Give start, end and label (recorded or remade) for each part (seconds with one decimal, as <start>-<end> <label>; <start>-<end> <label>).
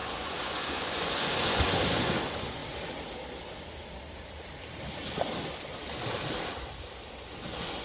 0.0-2.6 remade; 2.6-7.3 recorded; 7.3-7.8 remade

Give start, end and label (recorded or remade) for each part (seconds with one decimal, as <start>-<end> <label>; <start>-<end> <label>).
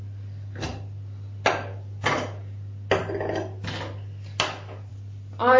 0.0-3.0 remade; 3.0-4.9 recorded; 4.9-5.6 remade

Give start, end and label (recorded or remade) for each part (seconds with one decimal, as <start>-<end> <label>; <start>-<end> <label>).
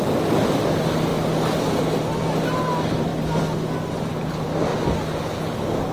0.0-5.9 recorded